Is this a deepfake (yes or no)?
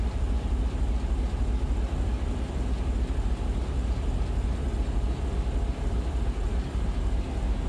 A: no